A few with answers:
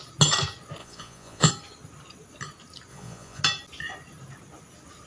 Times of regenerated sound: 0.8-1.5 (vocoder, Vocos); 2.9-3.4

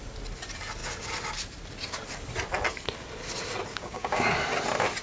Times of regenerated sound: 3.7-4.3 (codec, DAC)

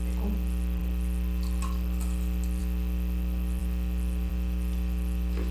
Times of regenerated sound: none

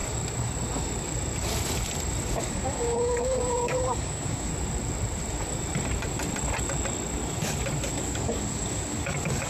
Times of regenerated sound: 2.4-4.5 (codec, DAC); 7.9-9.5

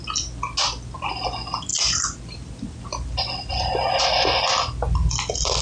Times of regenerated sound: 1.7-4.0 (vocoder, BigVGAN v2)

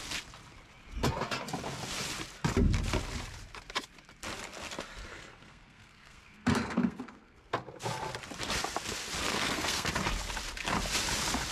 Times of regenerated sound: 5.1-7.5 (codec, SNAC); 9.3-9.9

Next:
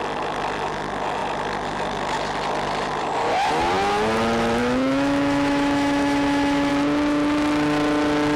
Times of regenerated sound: 4.6-6.7 (autoencoder, DAC-VAE)